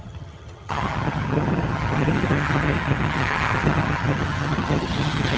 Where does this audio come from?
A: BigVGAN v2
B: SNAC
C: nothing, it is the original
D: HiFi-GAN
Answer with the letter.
D